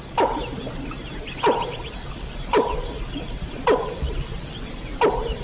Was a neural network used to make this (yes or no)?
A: yes